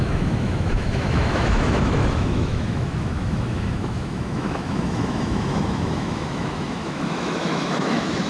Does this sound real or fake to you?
fake